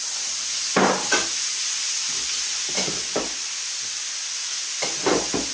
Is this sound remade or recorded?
recorded